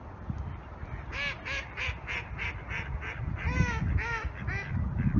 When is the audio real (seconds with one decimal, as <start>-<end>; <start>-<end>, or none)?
0.0-5.2